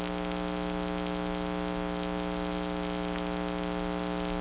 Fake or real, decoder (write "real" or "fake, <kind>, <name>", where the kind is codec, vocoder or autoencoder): real